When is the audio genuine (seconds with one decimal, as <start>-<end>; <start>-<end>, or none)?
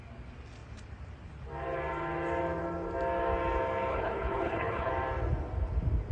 0.0-3.9; 4.9-6.1